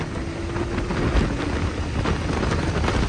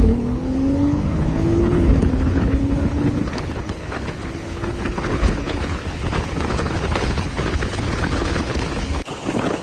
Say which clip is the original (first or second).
first